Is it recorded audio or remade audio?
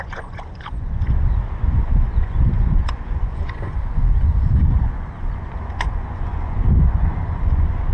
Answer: remade